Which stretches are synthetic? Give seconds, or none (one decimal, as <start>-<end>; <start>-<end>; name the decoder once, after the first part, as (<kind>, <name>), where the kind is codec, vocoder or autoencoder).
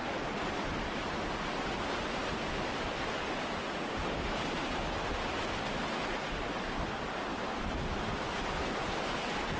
none